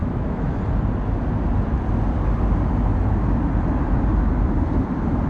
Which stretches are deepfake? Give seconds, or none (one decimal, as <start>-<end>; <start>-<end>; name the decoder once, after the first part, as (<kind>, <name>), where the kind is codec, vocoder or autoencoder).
0.0-0.6 (autoencoder, DAC-VAE)